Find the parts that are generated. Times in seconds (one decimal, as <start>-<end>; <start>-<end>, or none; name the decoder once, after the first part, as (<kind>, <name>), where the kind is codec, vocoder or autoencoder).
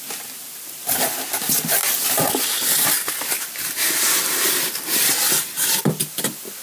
0.0-6.6 (vocoder, BigVGAN v2)